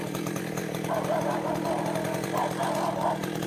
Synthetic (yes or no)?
no